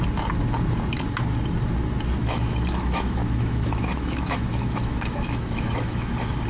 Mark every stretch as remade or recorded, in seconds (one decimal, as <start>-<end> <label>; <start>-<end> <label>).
0.0-2.2 recorded; 2.2-6.1 remade; 6.1-6.5 recorded